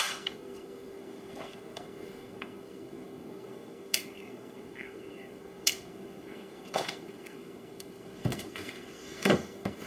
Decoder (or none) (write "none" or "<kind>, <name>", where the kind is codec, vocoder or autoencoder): codec, SNAC